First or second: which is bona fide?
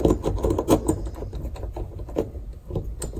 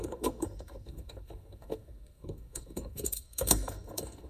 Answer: first